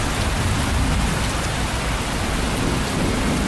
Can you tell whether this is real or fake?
real